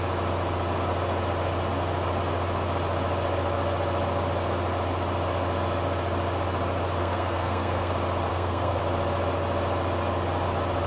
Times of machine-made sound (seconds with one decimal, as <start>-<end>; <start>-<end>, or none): 7.0-7.9; 8.3-8.8